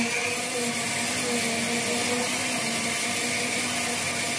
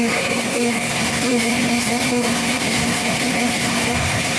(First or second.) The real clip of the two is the first